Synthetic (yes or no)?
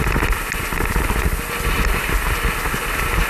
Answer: no